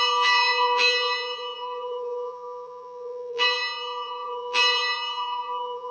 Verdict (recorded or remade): remade